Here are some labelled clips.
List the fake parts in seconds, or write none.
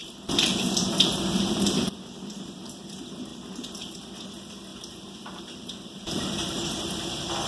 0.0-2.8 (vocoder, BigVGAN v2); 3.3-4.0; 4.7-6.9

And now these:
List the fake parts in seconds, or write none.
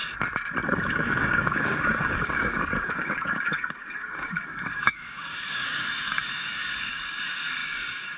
0.9-8.2 (codec, DAC)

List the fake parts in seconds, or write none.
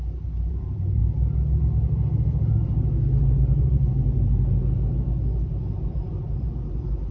0.5-1.0 (vocoder, BigVGAN v2); 3.2-4.0; 6.1-7.1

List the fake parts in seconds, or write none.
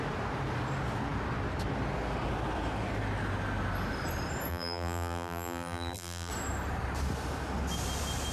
4.5-6.3 (vocoder, BigVGAN v2)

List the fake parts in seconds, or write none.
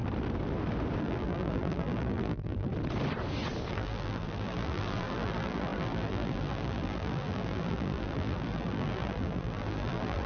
1.0-2.7 (vocoder, BigVGAN v2); 3.7-10.3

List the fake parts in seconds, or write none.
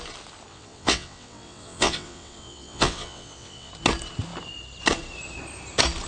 0.5-3.7 (vocoder, WaveNeXt)